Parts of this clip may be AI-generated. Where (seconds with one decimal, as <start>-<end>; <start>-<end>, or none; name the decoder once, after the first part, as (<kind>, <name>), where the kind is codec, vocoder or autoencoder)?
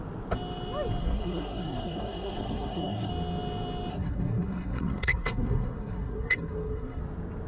1.0-3.1 (codec, SNAC); 3.9-7.0